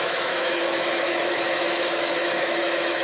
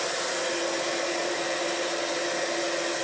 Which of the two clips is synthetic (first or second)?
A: first